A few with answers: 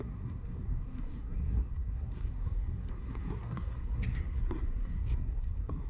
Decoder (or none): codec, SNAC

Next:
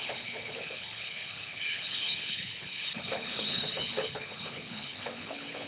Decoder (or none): codec, HILCodec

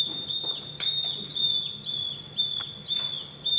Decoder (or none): none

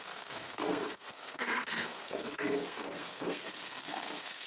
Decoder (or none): codec, SNAC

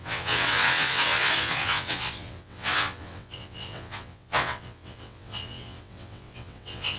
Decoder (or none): vocoder, WaveNeXt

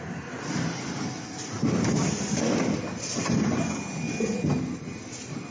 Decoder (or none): none